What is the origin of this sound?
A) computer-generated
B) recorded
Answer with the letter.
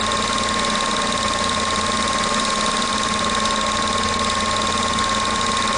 B